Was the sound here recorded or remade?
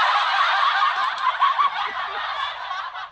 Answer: recorded